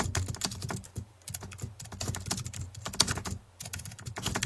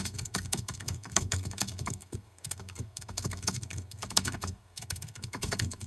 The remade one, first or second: second